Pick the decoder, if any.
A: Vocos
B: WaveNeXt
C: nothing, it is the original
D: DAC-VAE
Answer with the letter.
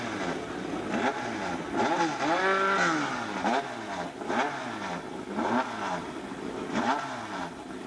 C